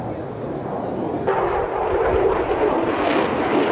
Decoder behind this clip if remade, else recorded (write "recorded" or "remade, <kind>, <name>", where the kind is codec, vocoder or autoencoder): recorded